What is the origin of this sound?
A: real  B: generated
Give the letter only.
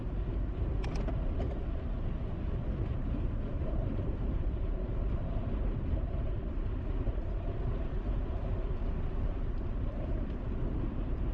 A